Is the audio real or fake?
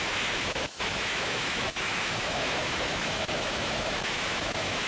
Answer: fake